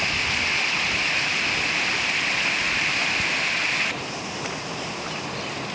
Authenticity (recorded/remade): recorded